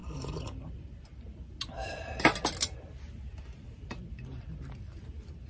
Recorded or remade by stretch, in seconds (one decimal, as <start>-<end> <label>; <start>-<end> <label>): 0.0-5.5 recorded